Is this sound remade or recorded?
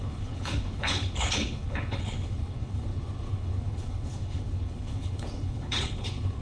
remade